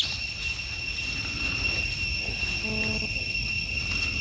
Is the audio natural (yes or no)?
yes